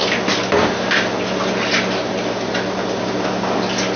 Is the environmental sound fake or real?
real